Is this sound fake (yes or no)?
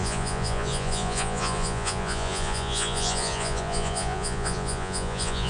yes